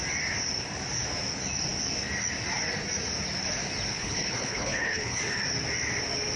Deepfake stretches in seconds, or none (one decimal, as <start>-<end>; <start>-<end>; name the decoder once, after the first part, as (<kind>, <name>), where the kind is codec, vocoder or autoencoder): 3.9-5.2 (codec, HILCodec)